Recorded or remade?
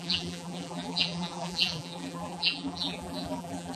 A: remade